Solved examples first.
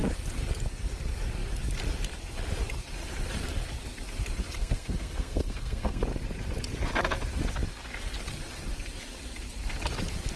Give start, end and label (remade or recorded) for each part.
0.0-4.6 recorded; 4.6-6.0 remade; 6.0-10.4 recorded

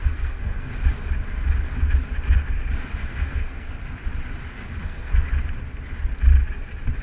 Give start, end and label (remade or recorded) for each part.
0.0-0.7 remade; 0.7-3.0 recorded; 3.0-3.7 remade; 3.7-4.8 recorded; 4.8-5.3 remade; 5.3-7.0 recorded